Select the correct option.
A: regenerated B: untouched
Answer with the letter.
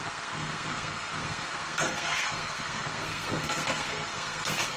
A